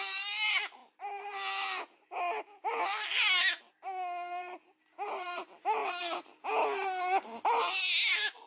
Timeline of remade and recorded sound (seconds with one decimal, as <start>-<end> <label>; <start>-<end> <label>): 0.0-8.5 recorded